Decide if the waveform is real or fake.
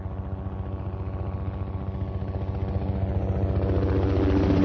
real